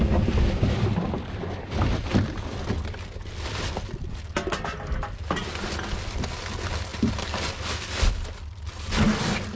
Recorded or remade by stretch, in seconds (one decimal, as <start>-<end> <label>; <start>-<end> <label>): 0.0-9.6 recorded